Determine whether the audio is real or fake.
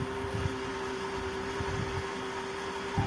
real